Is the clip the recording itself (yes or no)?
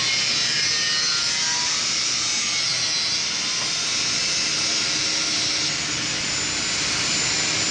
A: yes